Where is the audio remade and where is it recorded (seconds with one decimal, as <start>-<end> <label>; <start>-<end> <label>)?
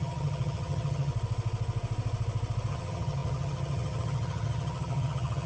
0.0-1.1 remade; 1.1-2.7 recorded; 2.7-5.5 remade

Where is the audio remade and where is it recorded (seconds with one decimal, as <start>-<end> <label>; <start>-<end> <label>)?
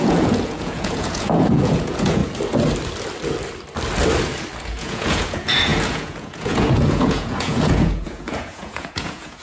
0.0-2.2 remade; 2.2-4.6 recorded; 4.6-9.4 remade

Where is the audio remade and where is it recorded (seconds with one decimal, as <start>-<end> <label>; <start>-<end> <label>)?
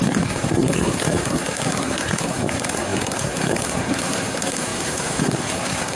0.0-6.0 remade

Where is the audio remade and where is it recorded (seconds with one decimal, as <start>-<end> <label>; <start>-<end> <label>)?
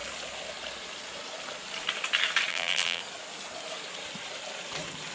0.0-2.5 recorded; 2.5-3.0 remade; 3.0-5.1 recorded